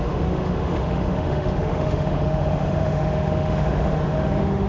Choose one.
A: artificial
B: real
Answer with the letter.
A